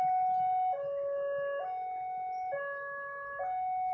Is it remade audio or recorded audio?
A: recorded